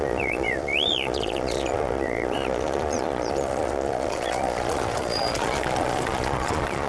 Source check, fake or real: fake